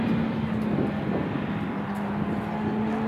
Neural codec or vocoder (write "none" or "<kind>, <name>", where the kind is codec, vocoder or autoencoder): none